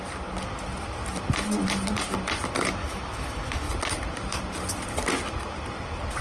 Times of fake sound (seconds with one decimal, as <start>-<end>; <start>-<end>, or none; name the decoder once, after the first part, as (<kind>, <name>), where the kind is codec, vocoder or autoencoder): 2.8-3.7 (autoencoder, DAC-VAE)